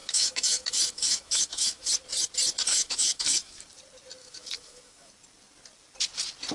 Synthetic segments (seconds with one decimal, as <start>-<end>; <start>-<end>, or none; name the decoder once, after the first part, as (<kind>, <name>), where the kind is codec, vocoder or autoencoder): 0.0-1.9 (autoencoder, DAC-VAE); 2.7-3.6; 4.2-5.1